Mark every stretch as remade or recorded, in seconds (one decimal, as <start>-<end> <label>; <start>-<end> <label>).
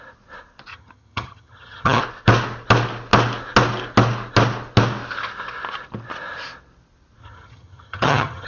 0.0-0.7 recorded; 0.7-2.0 remade; 2.0-7.2 recorded; 7.2-8.5 remade